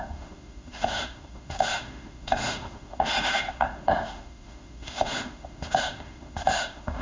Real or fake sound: fake